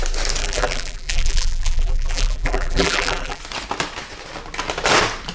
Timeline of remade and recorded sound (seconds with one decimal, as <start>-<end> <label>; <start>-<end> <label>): 0.0-0.4 recorded; 0.4-3.4 remade; 3.4-5.3 recorded